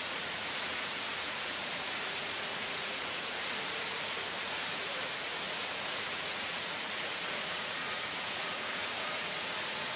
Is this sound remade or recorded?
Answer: remade